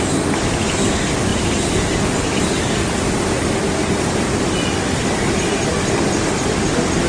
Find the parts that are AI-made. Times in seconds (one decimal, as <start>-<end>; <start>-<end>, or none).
1.3-2.6; 3.8-4.8